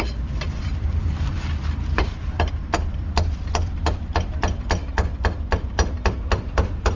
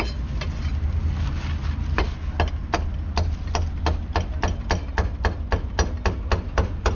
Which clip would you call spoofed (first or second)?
first